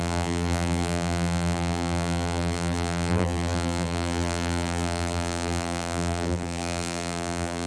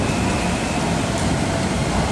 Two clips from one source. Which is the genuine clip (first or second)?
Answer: second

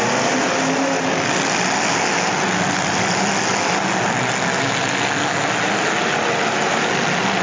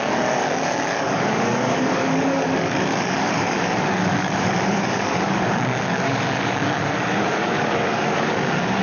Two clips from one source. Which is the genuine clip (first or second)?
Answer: first